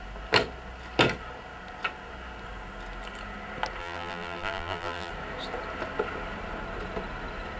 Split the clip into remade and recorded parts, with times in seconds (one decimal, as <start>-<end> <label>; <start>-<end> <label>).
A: 0.0-3.8 recorded; 3.8-5.1 remade; 5.1-7.6 recorded